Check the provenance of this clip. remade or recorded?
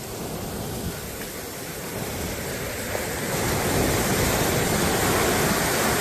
recorded